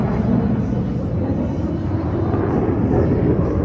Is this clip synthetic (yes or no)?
no